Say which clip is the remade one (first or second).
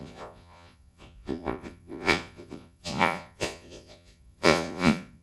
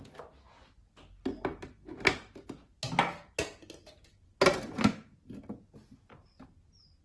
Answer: first